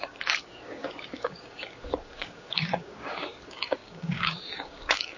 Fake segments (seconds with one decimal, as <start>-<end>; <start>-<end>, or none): 0.0-5.2